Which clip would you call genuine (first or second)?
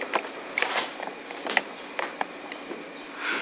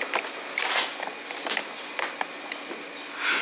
second